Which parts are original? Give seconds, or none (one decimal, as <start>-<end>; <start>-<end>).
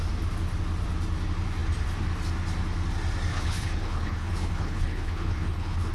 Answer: 0.0-3.3